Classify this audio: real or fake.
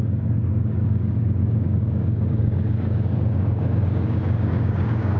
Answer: fake